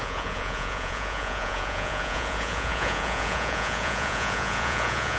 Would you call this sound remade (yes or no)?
yes